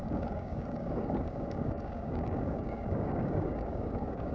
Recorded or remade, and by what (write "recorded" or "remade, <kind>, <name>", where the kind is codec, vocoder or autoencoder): remade, codec, DAC